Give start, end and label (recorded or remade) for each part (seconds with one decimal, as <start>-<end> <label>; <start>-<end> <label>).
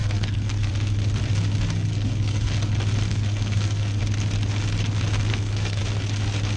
0.0-0.7 remade; 0.7-1.9 recorded; 1.9-2.5 remade; 2.5-3.1 recorded; 3.1-4.0 remade; 4.0-5.3 recorded; 5.3-5.8 remade; 5.8-6.6 recorded